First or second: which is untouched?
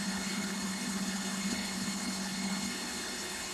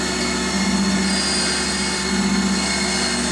second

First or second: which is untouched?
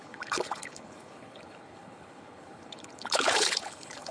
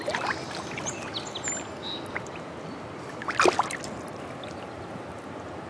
second